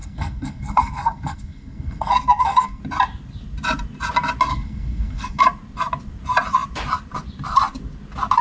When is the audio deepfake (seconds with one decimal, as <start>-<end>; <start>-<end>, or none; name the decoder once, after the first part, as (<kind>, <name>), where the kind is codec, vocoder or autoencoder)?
0.0-2.8 (codec, SNAC); 4.5-5.4